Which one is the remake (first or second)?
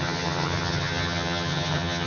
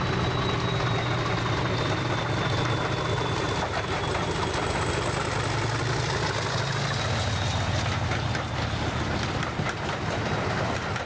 first